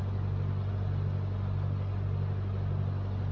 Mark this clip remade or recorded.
recorded